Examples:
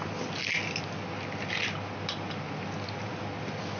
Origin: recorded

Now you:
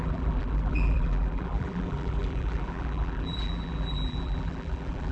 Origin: remade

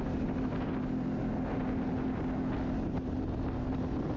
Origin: recorded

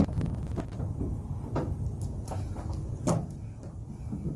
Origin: recorded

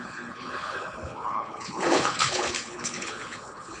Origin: remade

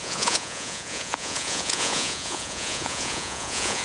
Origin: remade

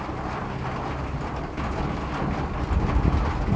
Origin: recorded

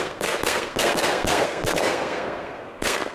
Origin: remade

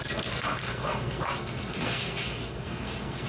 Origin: remade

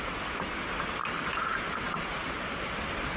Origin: recorded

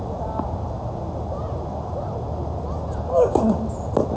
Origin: recorded